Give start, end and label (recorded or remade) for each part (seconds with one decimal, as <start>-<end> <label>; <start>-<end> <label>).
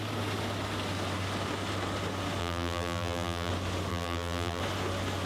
0.0-2.4 recorded; 2.4-3.5 remade; 3.5-3.9 recorded; 3.9-4.6 remade; 4.6-5.3 recorded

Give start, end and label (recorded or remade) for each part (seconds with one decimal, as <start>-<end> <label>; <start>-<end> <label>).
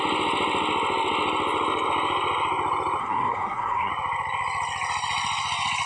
0.0-3.0 recorded; 3.0-3.9 remade; 3.9-5.9 recorded